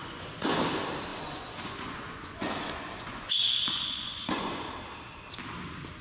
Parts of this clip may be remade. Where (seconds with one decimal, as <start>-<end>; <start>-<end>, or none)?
0.0-0.6; 1.1-4.7